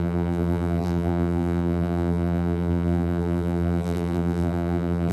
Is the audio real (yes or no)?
no